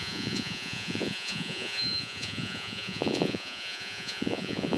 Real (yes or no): no